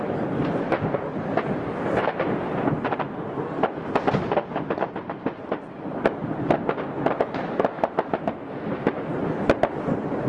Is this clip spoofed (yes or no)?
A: no